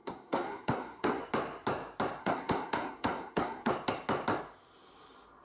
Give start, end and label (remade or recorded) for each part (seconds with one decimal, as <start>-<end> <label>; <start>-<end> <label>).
0.0-1.2 remade; 1.2-2.2 recorded; 2.2-3.7 remade; 3.7-5.4 recorded